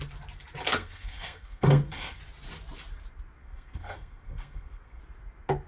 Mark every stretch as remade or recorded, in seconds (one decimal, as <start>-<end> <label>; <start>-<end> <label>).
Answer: 0.0-0.7 recorded; 0.7-2.2 remade; 2.2-3.4 recorded; 3.4-5.0 remade; 5.0-5.7 recorded